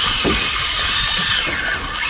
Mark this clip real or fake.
real